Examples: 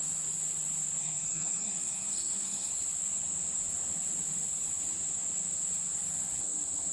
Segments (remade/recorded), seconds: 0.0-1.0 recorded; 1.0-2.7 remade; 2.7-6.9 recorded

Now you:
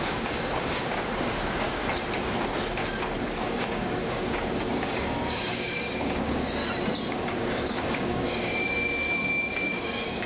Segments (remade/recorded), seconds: 0.0-1.8 remade; 1.8-3.2 recorded; 3.2-6.6 remade; 6.6-7.1 recorded; 7.1-10.3 remade

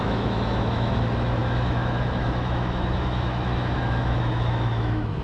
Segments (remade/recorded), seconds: 0.0-5.2 remade

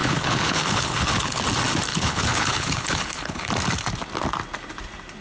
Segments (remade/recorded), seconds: 0.0-1.4 remade; 1.4-1.9 recorded; 1.9-3.5 remade; 3.5-5.2 recorded